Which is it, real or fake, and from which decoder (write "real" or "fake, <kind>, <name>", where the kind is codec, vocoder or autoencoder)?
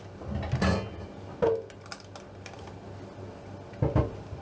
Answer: real